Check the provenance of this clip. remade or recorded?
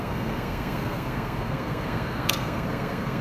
remade